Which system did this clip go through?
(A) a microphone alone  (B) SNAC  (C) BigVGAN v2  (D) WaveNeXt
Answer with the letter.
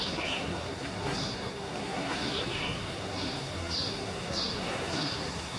B